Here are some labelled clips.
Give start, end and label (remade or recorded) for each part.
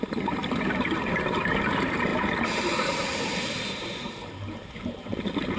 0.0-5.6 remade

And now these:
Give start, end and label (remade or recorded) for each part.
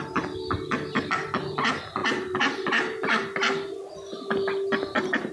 0.0-5.3 recorded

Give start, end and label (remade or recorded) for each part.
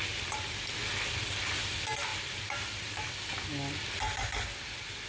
0.0-2.1 recorded; 2.1-3.1 remade; 3.1-5.1 recorded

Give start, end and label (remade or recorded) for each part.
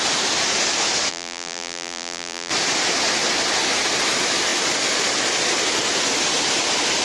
0.0-1.1 recorded; 1.1-2.5 remade; 2.5-7.0 recorded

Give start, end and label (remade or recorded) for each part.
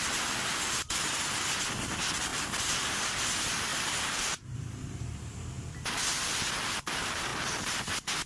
0.0-2.3 recorded; 2.3-3.0 remade; 3.0-3.7 recorded; 3.7-5.6 remade; 5.6-8.3 recorded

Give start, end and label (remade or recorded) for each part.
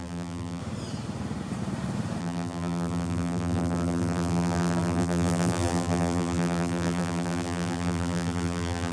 0.0-0.6 remade; 0.6-2.2 recorded; 2.2-8.9 remade